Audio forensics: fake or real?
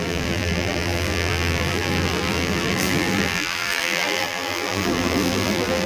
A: fake